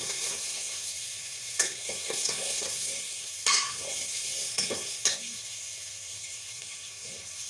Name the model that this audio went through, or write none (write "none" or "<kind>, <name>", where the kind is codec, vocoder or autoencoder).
codec, SNAC